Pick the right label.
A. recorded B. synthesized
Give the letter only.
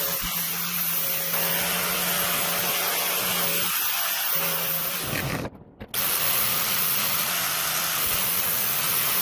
A